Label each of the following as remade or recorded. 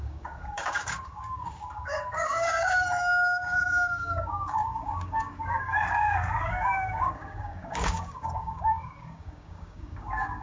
remade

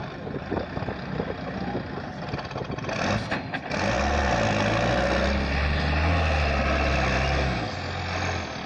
recorded